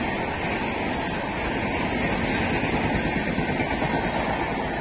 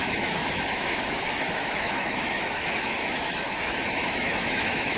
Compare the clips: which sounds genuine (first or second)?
first